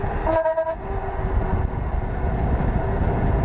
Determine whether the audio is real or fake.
real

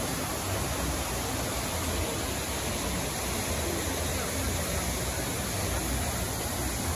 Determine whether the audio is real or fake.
real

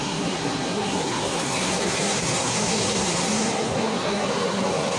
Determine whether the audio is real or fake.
fake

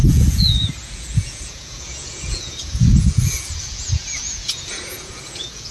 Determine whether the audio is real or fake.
fake